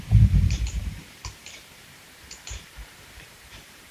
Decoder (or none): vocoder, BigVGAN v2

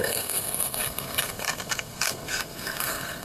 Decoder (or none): codec, SNAC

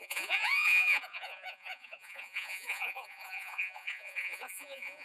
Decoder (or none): vocoder, Vocos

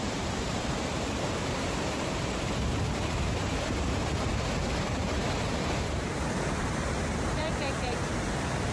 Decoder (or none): vocoder, BigVGAN v2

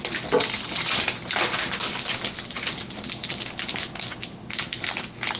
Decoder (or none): none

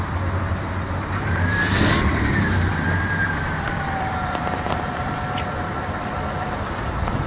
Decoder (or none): vocoder, BigVGAN v2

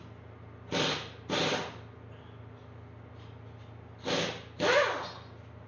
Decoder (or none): none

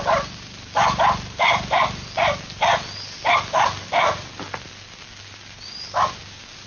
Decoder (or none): none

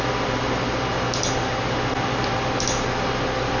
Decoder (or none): none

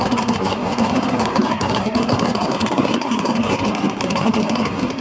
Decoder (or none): codec, SNAC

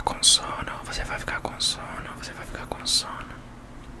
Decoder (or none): none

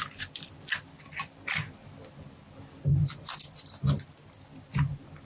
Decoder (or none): none